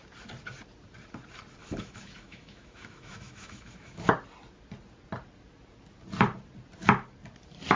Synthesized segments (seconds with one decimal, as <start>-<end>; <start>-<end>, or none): 1.6-4.1